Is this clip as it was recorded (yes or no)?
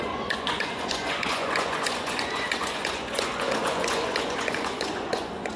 no